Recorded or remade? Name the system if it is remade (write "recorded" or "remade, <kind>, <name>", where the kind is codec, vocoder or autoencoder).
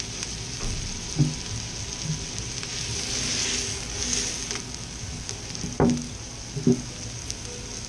recorded